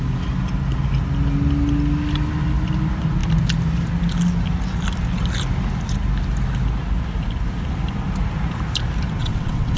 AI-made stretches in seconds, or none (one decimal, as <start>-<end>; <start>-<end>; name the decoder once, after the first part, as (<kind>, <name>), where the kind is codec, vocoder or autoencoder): 9.2-9.8 (vocoder, WaveNeXt)